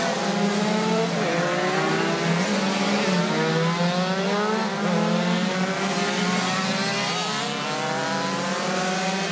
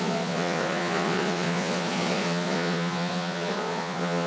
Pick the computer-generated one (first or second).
second